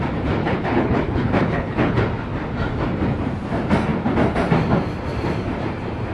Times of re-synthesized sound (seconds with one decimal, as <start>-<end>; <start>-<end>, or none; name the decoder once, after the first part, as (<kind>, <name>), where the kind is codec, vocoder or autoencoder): 0.4-2.0 (codec, HILCodec)